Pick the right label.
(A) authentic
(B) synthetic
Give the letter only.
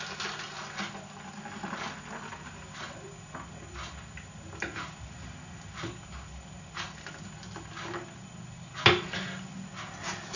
A